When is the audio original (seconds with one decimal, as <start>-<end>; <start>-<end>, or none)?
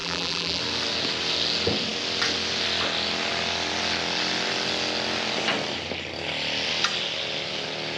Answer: 0.6-8.0